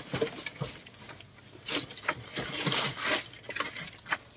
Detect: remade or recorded recorded